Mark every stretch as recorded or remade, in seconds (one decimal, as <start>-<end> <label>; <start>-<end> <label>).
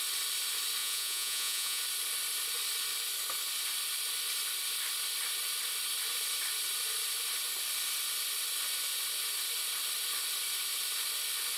0.0-0.8 recorded; 0.8-1.8 remade; 1.8-11.6 recorded